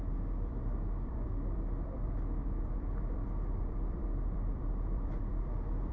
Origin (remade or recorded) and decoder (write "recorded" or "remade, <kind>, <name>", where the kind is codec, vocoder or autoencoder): remade, vocoder, BigVGAN v2